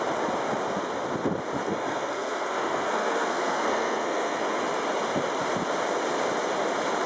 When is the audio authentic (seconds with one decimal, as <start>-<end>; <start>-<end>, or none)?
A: 0.0-1.6; 4.4-7.1

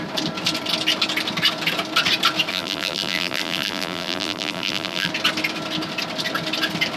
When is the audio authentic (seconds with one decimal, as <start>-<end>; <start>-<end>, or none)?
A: 0.0-2.5; 5.1-7.0

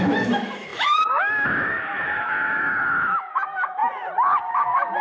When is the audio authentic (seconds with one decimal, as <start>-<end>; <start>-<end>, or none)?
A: 3.8-4.5

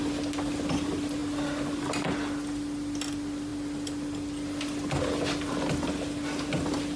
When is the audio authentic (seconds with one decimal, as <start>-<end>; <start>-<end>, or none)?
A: 0.0-7.0

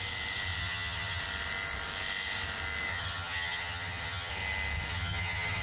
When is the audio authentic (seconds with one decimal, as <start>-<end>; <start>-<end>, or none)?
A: 0.0-0.6; 1.2-2.9; 4.3-4.9

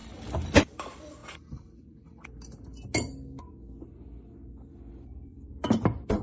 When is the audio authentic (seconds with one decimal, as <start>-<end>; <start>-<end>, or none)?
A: 0.0-0.6; 1.2-4.9; 5.5-6.2